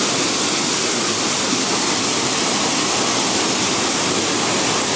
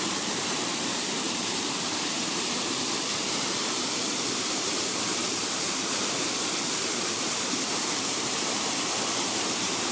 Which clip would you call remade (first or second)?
second